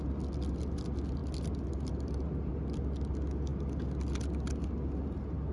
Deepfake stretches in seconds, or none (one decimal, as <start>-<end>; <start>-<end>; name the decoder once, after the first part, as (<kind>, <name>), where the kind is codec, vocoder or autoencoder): none